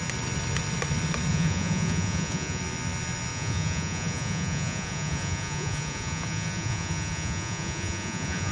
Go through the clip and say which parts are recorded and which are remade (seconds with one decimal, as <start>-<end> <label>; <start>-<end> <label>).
0.0-1.3 recorded; 1.3-2.6 remade; 2.6-3.3 recorded; 3.3-8.5 remade